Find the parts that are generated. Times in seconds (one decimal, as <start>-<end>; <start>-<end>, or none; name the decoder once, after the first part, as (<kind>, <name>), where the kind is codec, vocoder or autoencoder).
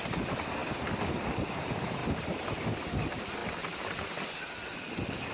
0.0-3.4 (vocoder, BigVGAN v2); 4.4-5.3